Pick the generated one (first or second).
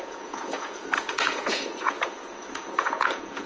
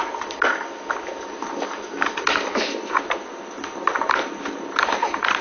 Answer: first